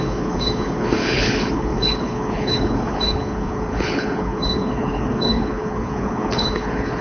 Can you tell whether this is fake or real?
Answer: fake